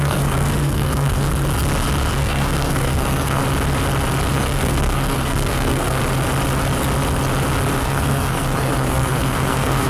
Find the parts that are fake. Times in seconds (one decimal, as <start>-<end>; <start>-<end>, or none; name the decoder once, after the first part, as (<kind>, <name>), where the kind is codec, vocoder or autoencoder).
0.0-1.3 (codec, SNAC); 2.1-3.4; 4.3-6.0; 7.8-9.9